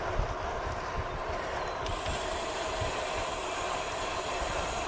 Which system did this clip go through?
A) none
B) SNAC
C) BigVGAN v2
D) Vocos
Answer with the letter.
A